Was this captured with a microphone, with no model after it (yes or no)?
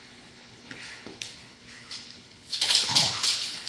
no